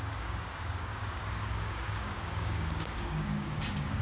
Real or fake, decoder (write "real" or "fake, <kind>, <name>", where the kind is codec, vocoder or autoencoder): fake, codec, DAC